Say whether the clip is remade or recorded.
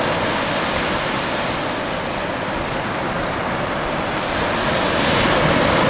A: recorded